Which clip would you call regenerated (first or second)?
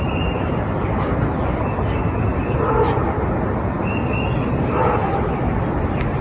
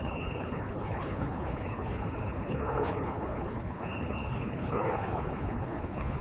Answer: second